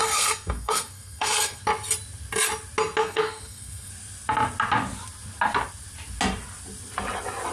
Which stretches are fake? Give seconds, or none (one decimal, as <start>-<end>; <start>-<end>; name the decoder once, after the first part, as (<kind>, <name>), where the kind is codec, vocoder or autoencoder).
0.0-1.6 (codec, SNAC); 3.0-3.9